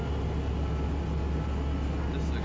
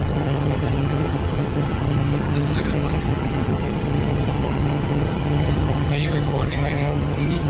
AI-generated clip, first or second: second